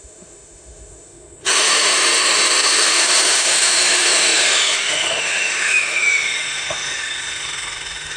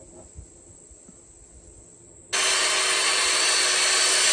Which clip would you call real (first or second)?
second